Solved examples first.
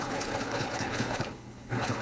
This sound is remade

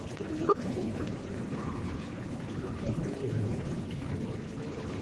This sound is remade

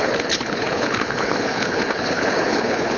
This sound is remade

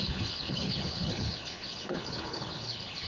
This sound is remade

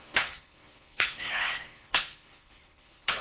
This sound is remade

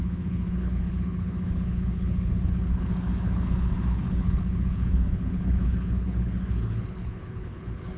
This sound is remade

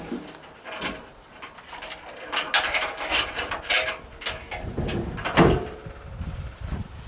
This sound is recorded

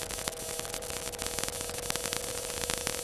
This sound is recorded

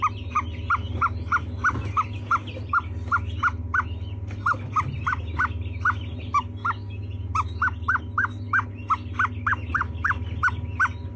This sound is recorded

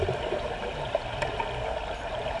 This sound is recorded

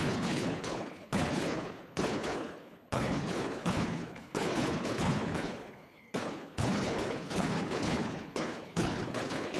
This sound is remade